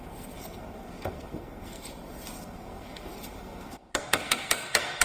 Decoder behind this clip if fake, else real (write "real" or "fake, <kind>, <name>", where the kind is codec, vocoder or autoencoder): fake, codec, SNAC